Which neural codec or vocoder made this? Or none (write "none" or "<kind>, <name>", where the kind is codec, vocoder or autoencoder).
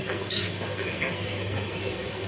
codec, SNAC